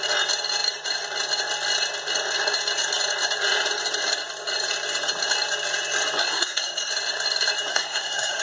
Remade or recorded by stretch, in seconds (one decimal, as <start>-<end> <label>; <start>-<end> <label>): 0.0-6.2 recorded; 6.2-6.9 remade; 6.9-7.7 recorded; 7.7-8.4 remade